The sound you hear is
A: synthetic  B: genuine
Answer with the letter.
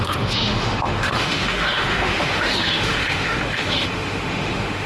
A